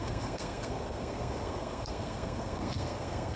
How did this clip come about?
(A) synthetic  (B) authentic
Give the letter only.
A